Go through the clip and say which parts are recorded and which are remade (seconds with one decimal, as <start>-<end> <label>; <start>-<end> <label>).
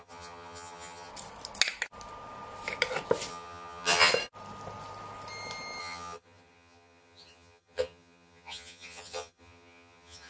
0.0-1.1 remade; 1.1-3.3 recorded; 3.3-4.1 remade; 4.1-5.8 recorded; 5.8-10.3 remade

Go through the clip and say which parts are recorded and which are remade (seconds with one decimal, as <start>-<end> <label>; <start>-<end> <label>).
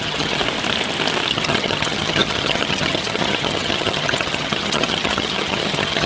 0.0-0.4 remade; 0.4-1.3 recorded; 1.3-6.1 remade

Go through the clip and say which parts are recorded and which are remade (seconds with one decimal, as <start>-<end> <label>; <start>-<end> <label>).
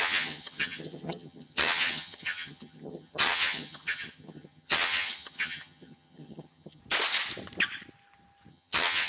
0.0-6.8 remade; 6.8-8.5 recorded; 8.5-9.1 remade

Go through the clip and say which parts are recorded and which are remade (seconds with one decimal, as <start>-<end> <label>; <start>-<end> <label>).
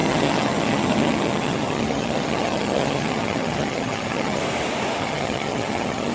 0.0-4.4 remade; 4.4-5.0 recorded; 5.0-6.1 remade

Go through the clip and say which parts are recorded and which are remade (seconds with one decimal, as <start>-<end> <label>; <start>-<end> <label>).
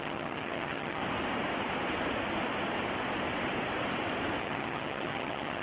0.0-1.0 remade; 1.0-4.4 recorded; 4.4-5.6 remade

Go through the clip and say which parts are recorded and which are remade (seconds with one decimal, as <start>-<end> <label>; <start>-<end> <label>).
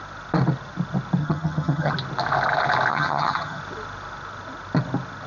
0.0-1.2 recorded; 1.2-1.9 remade; 1.9-2.9 recorded; 2.9-3.6 remade; 3.6-5.3 recorded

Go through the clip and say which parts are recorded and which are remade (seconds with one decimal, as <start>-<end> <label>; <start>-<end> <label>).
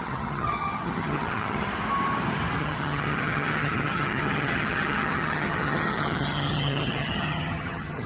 0.0-1.7 remade; 1.7-2.6 recorded; 2.6-8.1 remade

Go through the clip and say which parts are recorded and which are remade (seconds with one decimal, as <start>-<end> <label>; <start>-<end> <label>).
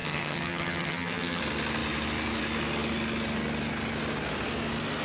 0.0-1.4 remade; 1.4-5.0 recorded